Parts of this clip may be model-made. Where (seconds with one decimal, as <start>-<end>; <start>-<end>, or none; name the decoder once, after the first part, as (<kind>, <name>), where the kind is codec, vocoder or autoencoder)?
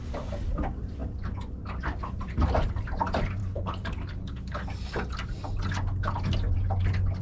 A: 3.4-4.6 (codec, HILCodec)